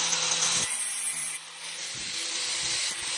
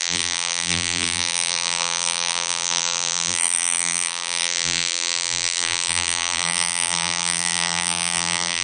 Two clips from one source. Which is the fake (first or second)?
second